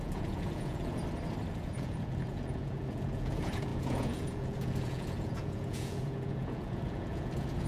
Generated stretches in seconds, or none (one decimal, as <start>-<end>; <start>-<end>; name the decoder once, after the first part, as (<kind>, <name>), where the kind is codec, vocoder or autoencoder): 0.0-1.0 (vocoder, Vocos); 1.5-7.7